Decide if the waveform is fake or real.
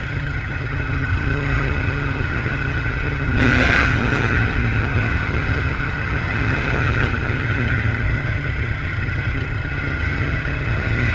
fake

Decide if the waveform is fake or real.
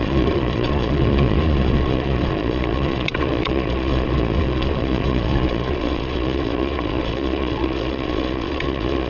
fake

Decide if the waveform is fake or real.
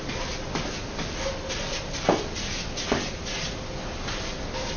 real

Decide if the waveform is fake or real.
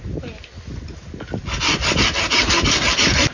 real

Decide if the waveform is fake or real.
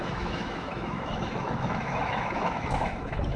fake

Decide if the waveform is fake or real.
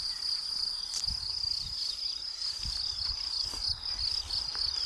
real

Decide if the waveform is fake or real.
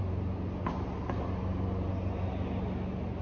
real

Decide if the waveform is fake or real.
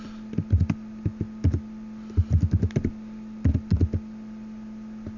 real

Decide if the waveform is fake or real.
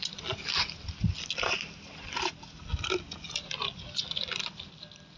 real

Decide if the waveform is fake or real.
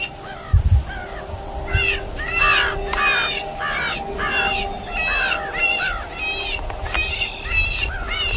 real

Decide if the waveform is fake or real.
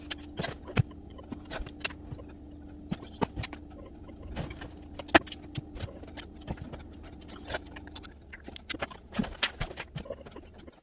real